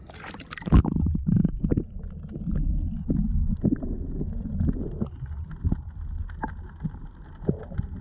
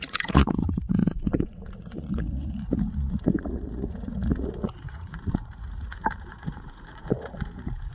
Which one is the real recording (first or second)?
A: first